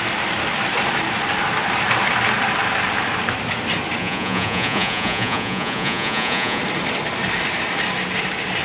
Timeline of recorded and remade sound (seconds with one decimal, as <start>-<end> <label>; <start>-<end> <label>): 0.0-4.0 recorded; 4.0-6.6 remade; 6.6-8.6 recorded